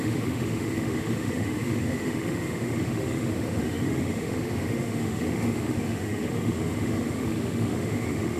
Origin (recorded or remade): remade